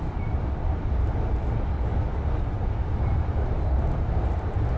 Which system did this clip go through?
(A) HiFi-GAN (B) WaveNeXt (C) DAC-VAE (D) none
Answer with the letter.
D